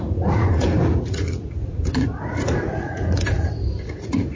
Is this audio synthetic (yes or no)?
yes